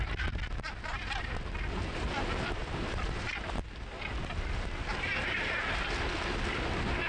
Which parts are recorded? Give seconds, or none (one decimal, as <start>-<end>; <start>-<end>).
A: 0.0-7.1